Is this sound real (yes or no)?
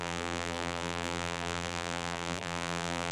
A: no